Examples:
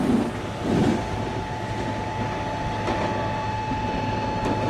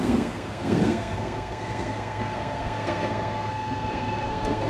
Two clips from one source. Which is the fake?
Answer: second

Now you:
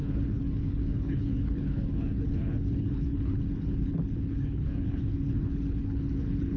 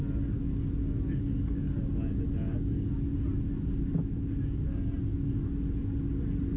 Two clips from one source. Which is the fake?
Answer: first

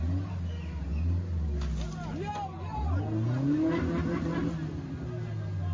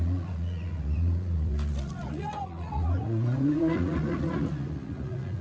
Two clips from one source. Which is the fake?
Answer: second